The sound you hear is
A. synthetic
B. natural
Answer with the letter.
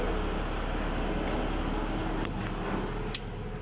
B